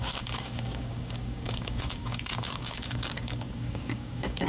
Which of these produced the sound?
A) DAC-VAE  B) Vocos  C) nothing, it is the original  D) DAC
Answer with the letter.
D